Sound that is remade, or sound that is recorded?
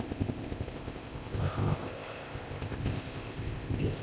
remade